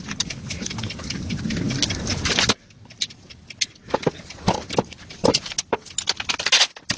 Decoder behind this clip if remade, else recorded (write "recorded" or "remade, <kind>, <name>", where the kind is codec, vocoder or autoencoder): recorded